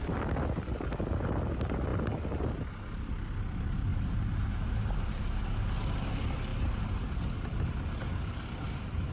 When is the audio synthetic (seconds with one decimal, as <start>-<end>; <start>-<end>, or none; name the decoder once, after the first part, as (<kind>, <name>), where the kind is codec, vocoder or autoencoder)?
3.9-5.2 (vocoder, BigVGAN v2)